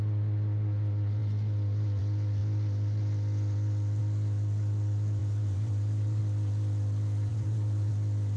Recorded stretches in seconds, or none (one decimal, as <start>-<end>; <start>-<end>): 0.0-5.2; 6.2-7.3; 7.9-8.4